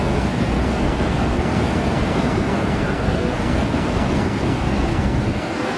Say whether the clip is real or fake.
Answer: fake